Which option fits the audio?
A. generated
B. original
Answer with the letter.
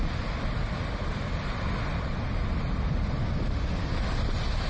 B